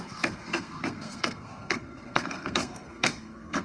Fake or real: fake